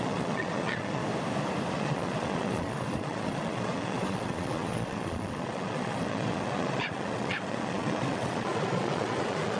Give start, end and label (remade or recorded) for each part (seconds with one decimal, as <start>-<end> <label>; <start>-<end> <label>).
0.0-1.0 remade; 1.0-1.7 recorded; 1.7-9.6 remade